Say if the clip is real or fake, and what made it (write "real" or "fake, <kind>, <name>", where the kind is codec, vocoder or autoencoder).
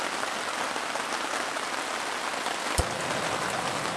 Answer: real